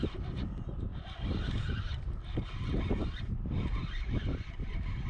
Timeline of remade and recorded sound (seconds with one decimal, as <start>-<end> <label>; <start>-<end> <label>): 0.0-5.1 recorded